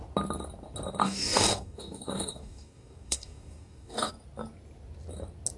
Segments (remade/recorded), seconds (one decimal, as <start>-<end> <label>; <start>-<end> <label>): 0.0-1.0 recorded; 1.0-4.1 remade; 4.1-5.6 recorded